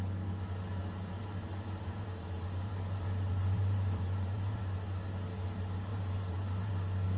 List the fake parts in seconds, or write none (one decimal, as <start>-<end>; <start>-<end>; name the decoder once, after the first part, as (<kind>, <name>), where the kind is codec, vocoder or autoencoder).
0.8-4.6 (vocoder, BigVGAN v2); 5.9-6.7